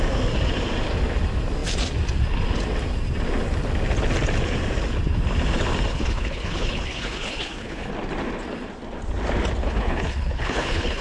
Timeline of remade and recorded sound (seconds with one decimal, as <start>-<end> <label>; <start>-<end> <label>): 0.0-5.9 recorded; 5.9-7.9 remade; 7.9-9.6 recorded; 9.6-11.0 remade

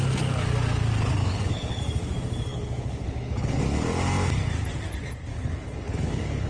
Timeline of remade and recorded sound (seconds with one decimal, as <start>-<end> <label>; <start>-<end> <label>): 0.0-1.2 recorded; 1.2-1.8 remade; 1.8-2.5 recorded; 2.5-3.6 remade; 3.6-5.3 recorded; 5.3-6.5 remade